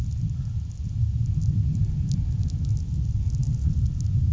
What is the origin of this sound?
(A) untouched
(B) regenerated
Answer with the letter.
A